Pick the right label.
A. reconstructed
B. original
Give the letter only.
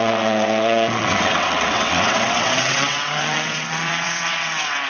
A